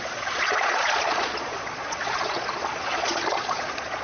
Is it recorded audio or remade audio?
remade